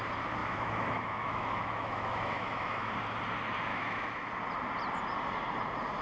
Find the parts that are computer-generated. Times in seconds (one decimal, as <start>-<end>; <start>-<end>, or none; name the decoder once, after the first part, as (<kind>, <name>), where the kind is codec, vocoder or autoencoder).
0.4-2.9 (autoencoder, DAC-VAE); 3.7-4.3

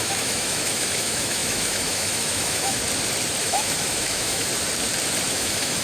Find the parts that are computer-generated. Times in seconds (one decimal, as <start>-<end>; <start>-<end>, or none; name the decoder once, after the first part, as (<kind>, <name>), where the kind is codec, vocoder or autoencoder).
0.0-2.8 (autoencoder, DAC-VAE); 3.4-4.5; 5.3-5.8